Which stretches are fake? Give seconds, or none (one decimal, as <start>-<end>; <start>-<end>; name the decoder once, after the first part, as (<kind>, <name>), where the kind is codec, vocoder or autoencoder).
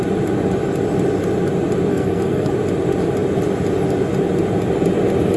1.9-2.5 (codec, SNAC)